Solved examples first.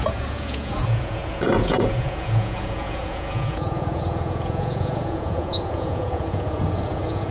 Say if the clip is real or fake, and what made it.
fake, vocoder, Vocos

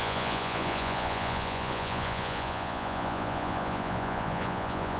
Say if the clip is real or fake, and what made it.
fake, vocoder, Vocos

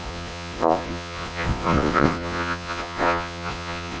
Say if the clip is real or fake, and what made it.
fake, vocoder, Vocos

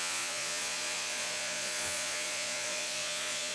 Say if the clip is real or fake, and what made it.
fake, vocoder, Vocos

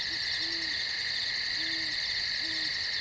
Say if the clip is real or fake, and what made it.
real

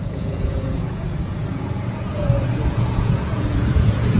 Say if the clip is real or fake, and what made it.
fake, vocoder, Vocos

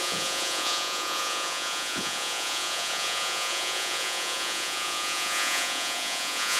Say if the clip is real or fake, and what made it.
fake, vocoder, Vocos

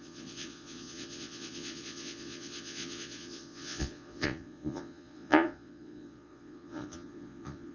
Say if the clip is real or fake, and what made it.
fake, vocoder, Vocos